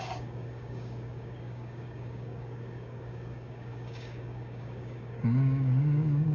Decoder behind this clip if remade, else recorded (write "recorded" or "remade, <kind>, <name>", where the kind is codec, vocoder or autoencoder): remade, codec, DAC